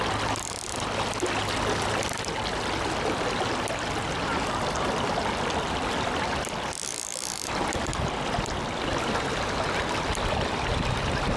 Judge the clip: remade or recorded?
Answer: recorded